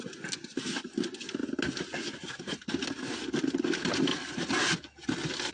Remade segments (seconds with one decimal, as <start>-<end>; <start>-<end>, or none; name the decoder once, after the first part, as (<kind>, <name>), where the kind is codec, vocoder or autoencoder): none